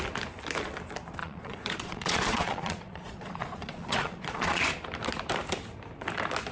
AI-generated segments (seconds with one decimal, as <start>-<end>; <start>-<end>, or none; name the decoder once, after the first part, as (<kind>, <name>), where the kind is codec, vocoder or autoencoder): 1.2-4.6 (vocoder, Vocos)